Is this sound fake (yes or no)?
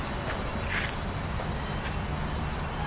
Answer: no